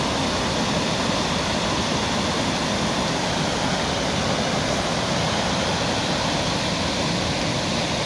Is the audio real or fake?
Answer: real